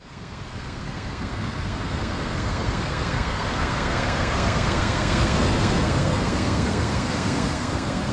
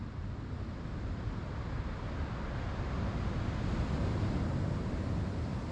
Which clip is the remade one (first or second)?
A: first